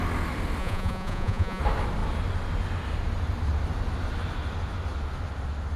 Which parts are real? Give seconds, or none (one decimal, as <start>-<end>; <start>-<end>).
0.0-0.6; 1.6-5.8